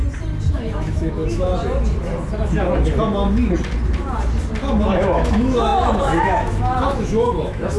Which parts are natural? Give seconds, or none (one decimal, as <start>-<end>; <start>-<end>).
0.0-0.5; 1.5-4.8